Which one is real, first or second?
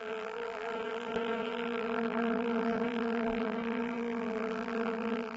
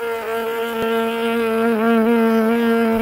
second